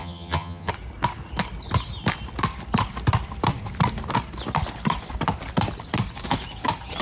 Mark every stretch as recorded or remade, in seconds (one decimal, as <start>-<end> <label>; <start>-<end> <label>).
0.0-0.7 remade; 0.7-7.0 recorded